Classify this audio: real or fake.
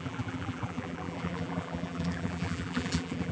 fake